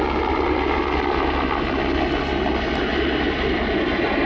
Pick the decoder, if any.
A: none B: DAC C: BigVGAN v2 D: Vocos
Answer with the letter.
A